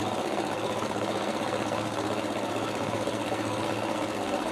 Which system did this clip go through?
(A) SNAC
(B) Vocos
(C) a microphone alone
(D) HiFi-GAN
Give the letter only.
A